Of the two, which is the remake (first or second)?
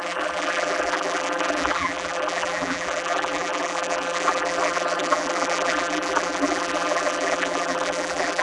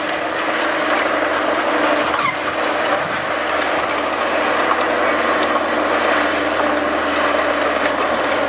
first